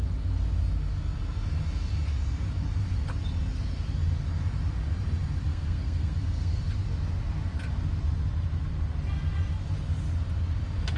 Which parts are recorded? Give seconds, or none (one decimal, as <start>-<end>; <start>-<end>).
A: 0.0-5.5; 6.6-11.0